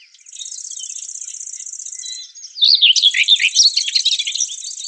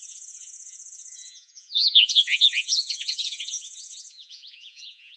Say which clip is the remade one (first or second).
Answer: second